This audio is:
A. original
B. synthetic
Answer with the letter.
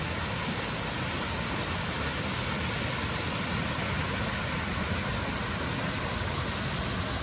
A